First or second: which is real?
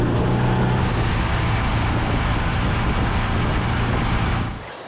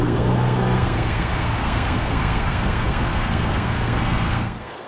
first